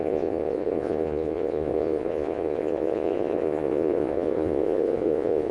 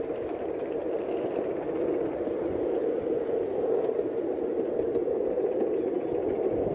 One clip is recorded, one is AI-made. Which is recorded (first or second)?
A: second